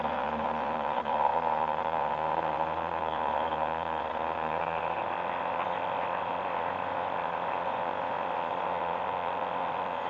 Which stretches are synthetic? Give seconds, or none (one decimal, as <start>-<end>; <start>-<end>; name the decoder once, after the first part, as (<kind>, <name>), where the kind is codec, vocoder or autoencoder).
0.0-10.1 (vocoder, Vocos)